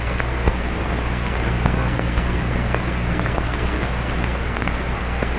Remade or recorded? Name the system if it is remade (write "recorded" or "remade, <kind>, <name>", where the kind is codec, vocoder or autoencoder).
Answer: remade, codec, SNAC